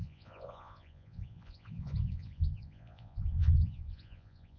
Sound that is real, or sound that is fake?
fake